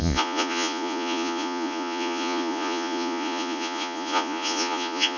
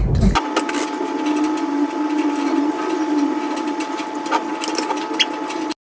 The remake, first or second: first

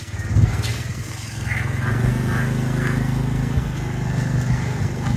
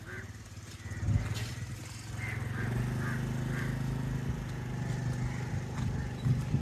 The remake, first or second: first